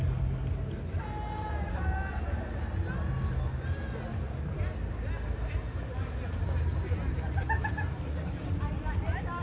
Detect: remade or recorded recorded